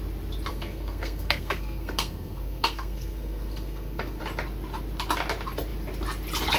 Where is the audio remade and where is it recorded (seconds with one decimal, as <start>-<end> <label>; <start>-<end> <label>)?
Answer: 0.0-0.5 recorded; 0.5-4.2 remade; 4.2-6.6 recorded

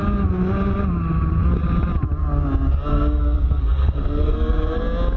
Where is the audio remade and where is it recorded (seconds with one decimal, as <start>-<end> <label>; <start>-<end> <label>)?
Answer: 0.0-2.9 recorded; 2.9-4.8 remade; 4.8-5.2 recorded

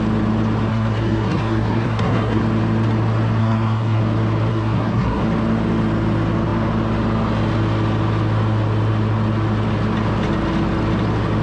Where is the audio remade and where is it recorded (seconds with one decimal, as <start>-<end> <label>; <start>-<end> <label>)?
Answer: 0.0-0.7 recorded; 0.7-2.4 remade; 2.4-3.4 recorded; 3.4-4.0 remade; 4.0-4.5 recorded; 4.5-5.2 remade; 5.2-11.4 recorded

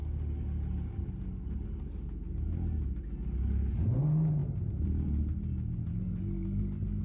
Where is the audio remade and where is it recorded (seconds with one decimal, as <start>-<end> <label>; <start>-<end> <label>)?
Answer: 0.0-7.0 recorded

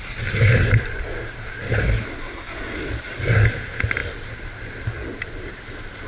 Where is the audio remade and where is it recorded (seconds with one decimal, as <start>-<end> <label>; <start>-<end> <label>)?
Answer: 0.0-6.1 recorded

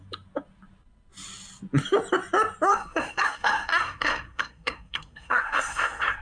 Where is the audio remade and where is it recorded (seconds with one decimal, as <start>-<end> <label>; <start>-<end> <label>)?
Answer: 0.0-2.7 recorded; 2.7-6.2 remade